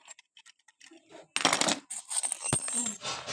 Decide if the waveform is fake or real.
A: real